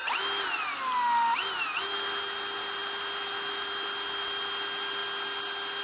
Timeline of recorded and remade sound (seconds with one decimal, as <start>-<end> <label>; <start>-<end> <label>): 0.0-5.8 recorded